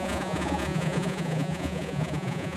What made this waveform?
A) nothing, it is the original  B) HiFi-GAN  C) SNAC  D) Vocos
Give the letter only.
D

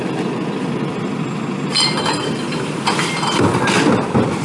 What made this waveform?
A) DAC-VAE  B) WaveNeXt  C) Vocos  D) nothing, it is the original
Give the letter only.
D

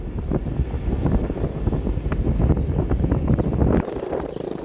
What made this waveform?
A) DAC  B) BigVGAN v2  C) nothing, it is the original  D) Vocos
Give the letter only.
C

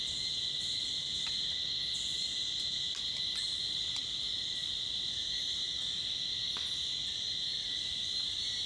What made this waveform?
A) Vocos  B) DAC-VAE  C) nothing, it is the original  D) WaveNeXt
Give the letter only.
C